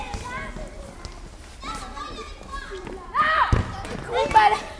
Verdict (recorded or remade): recorded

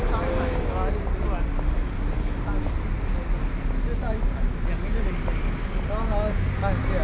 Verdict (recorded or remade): recorded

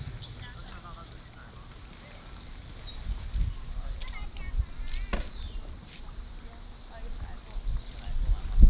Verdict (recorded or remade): recorded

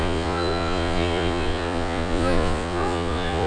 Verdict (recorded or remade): remade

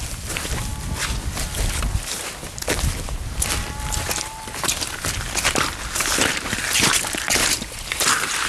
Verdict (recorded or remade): recorded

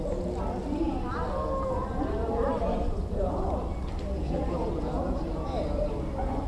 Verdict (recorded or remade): recorded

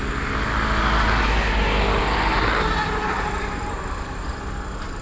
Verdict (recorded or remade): recorded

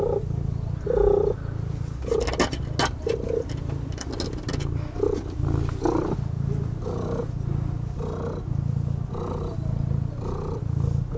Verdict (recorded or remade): recorded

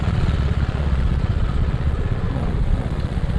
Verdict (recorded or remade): remade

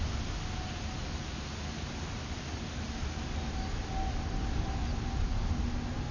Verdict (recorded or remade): recorded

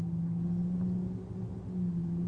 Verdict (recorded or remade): recorded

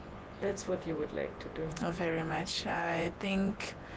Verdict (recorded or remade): remade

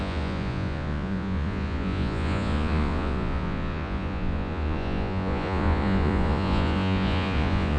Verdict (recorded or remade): remade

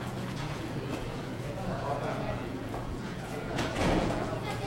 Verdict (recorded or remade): remade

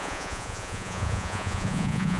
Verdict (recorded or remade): remade